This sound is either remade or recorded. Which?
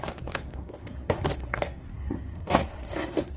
remade